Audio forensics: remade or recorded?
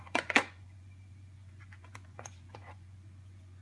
remade